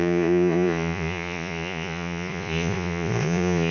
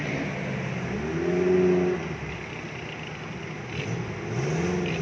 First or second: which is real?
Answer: second